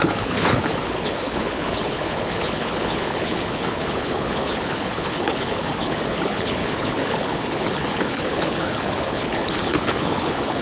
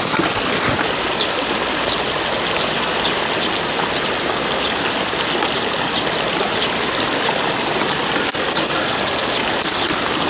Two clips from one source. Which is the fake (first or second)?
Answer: first